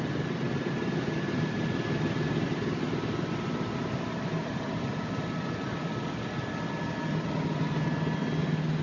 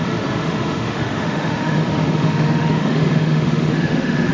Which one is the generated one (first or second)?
second